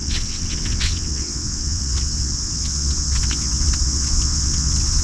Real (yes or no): no